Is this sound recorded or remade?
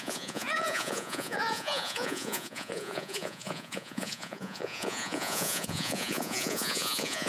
remade